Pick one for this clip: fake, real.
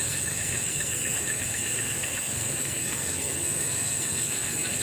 fake